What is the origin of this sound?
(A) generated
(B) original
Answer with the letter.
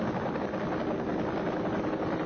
B